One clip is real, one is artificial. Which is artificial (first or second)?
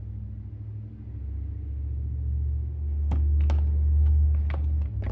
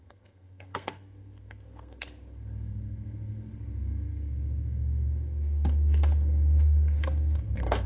second